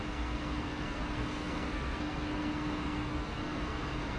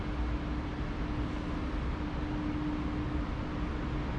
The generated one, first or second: first